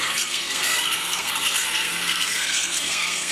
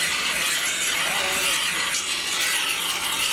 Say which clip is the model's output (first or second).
first